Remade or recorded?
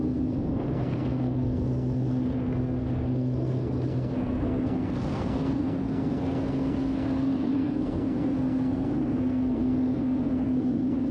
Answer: remade